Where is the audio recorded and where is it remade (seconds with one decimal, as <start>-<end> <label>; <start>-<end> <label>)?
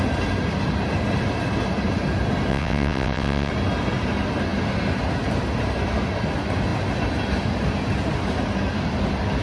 0.0-2.5 recorded; 2.5-3.5 remade; 3.5-9.4 recorded